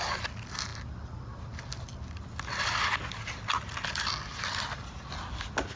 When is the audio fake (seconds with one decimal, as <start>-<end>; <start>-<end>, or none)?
none

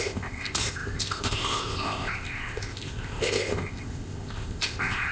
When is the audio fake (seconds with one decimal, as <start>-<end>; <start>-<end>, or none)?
0.0-5.1

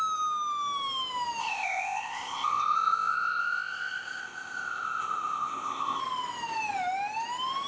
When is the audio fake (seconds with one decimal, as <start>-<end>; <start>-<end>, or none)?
1.4-6.0

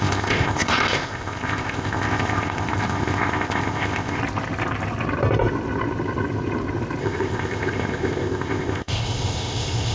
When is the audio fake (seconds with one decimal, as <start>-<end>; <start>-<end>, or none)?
0.0-4.2; 7.0-9.9